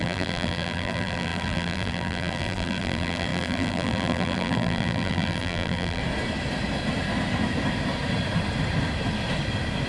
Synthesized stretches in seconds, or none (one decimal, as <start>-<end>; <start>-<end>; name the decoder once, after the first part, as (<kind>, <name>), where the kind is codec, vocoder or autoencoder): 0.0-6.0 (vocoder, BigVGAN v2)